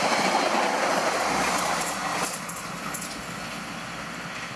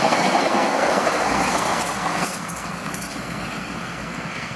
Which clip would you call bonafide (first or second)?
first